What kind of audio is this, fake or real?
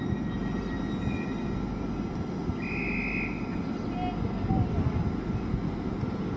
real